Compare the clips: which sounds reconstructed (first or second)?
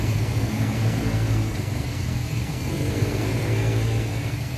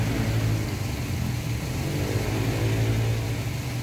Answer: first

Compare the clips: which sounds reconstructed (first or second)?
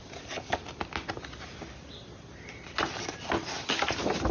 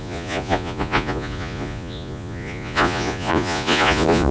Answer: second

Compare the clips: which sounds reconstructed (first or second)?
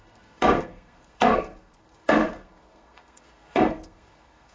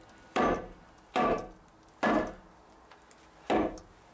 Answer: first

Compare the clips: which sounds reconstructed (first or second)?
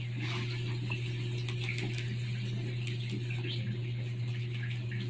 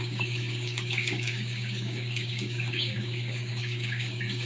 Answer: second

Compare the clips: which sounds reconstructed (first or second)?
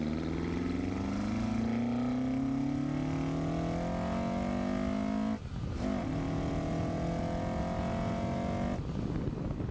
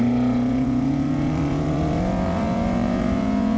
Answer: second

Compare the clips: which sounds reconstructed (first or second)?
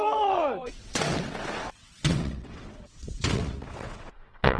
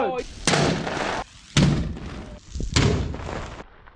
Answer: first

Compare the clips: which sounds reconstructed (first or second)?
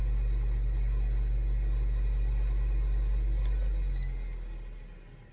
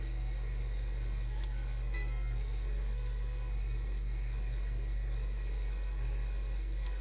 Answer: second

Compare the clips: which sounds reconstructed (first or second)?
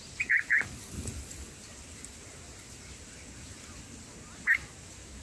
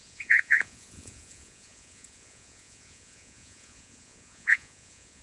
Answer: second